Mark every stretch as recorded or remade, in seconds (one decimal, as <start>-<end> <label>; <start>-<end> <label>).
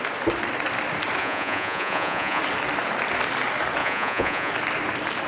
0.0-1.2 recorded; 1.2-2.4 remade; 2.4-3.8 recorded; 3.8-4.5 remade; 4.5-5.3 recorded